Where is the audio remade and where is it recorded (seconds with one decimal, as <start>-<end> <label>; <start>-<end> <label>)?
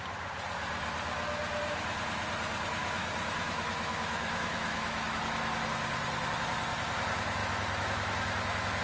0.0-2.8 recorded; 2.8-5.2 remade; 5.2-7.4 recorded; 7.4-8.8 remade